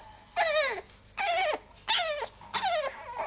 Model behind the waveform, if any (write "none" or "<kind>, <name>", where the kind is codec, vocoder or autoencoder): none